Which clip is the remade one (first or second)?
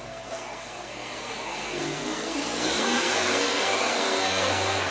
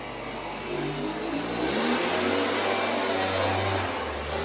first